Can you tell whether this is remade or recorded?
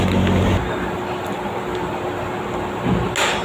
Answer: recorded